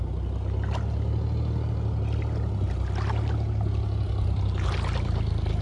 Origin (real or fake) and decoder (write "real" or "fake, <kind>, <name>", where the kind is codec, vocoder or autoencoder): real